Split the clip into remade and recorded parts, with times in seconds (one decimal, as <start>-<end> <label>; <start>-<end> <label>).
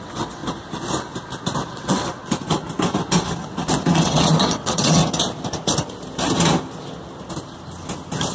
0.0-0.4 remade; 0.4-1.7 recorded; 1.7-2.2 remade; 2.2-3.9 recorded; 3.9-5.0 remade; 5.0-8.3 recorded